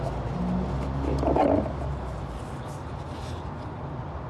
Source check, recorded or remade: recorded